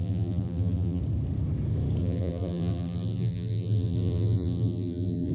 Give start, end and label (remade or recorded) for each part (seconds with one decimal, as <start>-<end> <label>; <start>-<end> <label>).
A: 0.0-1.0 remade; 1.0-2.0 recorded; 2.0-5.3 remade